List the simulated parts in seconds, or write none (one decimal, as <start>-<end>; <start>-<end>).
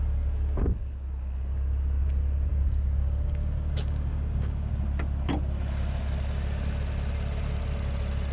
2.5-4.7